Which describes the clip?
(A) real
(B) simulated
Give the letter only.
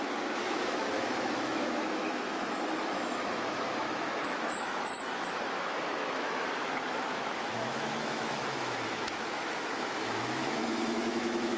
B